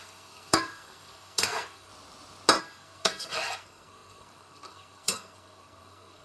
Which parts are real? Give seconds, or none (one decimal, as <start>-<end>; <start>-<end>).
1.9-2.6